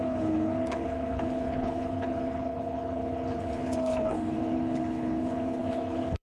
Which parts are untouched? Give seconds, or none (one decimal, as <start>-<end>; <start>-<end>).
none